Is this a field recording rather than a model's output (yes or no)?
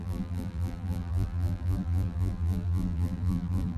no